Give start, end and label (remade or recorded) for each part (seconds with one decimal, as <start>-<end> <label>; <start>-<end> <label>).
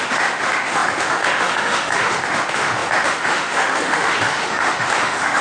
0.0-5.4 remade